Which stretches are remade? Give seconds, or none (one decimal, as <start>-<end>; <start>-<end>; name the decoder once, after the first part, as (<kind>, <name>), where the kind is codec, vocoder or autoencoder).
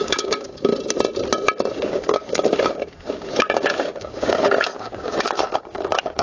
0.0-0.7 (codec, DAC); 1.7-6.2